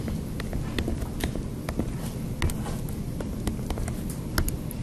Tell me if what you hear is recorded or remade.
recorded